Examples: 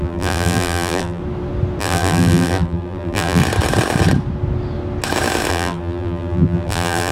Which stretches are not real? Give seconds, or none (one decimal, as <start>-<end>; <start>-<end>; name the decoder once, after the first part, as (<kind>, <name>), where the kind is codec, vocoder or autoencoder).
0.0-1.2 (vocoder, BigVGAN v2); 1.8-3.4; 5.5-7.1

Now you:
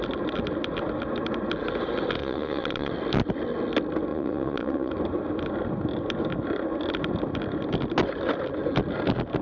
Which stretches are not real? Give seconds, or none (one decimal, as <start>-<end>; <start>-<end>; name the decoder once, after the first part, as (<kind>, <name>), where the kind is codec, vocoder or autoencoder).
2.2-2.9 (vocoder, Vocos); 4.1-4.9

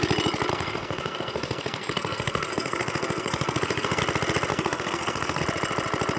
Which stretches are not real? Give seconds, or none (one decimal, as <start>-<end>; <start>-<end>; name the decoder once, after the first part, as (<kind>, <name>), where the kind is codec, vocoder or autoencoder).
0.5-4.0 (codec, SNAC); 4.5-5.4

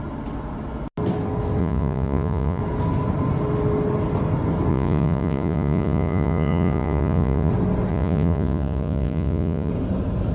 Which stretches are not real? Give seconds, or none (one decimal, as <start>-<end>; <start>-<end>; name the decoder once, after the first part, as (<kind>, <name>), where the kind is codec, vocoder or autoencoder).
1.6-2.6 (vocoder, Vocos); 4.7-7.5; 7.9-9.7